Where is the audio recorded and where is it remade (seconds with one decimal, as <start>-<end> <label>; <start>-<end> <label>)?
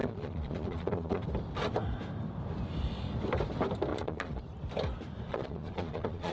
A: 0.0-1.2 remade; 1.2-3.9 recorded; 3.9-4.4 remade; 4.4-5.3 recorded; 5.3-6.3 remade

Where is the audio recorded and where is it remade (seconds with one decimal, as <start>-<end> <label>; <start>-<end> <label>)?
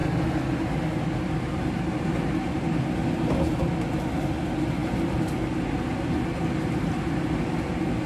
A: 0.0-8.1 recorded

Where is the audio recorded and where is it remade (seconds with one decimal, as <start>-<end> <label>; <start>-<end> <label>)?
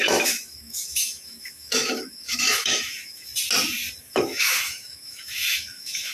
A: 0.0-3.3 remade; 3.3-4.0 recorded; 4.0-6.1 remade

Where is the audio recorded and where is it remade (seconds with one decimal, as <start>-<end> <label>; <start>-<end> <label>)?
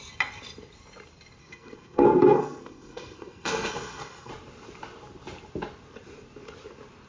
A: 0.0-1.4 recorded; 1.4-4.3 remade; 4.3-7.1 recorded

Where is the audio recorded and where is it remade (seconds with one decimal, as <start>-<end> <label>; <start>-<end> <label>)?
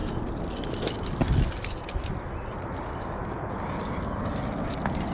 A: 0.0-2.8 recorded; 2.8-3.2 remade; 3.2-5.1 recorded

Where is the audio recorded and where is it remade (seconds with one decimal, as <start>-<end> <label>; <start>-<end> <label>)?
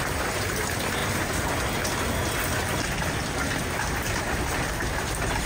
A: 0.0-5.4 recorded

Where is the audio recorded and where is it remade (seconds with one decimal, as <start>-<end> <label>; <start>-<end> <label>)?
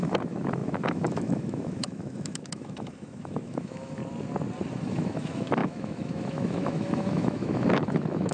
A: 0.0-4.0 remade; 4.0-4.7 recorded; 4.7-8.3 remade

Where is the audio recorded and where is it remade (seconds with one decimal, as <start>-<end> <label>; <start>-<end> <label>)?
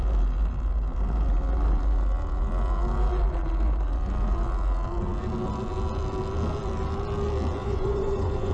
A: 0.0-7.6 recorded; 7.6-8.5 remade